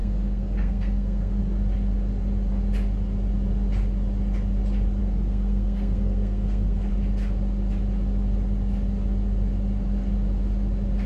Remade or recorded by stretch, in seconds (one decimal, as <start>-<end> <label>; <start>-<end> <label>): 0.0-1.4 remade; 1.4-5.0 recorded; 5.0-6.9 remade; 6.9-11.1 recorded